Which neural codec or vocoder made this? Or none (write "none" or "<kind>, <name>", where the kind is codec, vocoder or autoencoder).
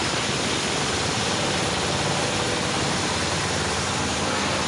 none